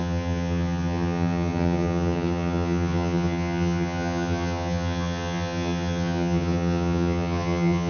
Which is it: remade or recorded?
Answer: remade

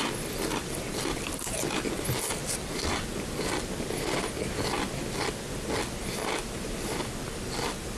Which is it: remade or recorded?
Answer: recorded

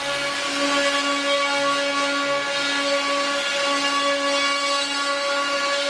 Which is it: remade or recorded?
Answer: recorded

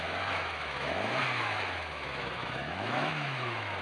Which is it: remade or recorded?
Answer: remade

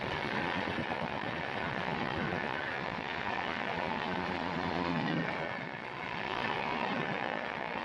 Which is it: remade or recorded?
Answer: remade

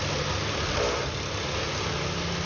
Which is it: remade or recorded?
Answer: recorded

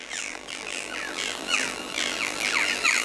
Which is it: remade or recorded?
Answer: remade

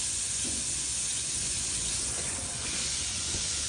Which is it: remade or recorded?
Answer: remade